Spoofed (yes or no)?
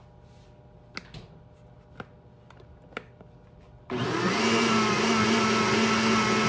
no